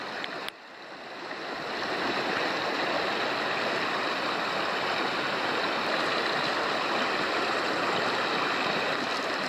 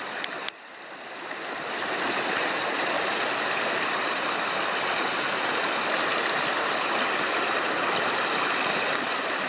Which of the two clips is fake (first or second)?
second